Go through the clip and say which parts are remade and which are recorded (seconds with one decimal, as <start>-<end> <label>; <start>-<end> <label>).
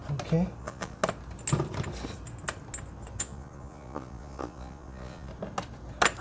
0.0-0.6 recorded; 0.6-1.0 remade; 1.0-3.2 recorded; 3.2-5.3 remade; 5.3-6.2 recorded